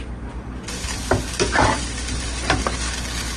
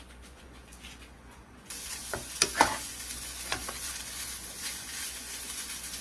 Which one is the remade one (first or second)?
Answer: second